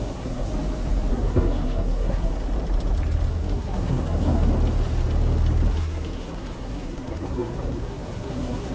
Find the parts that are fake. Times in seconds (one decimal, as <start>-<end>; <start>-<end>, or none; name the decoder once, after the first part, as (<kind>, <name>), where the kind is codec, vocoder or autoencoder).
0.0-0.5 (codec, SNAC); 1.1-2.3; 3.3-4.5; 5.7-8.7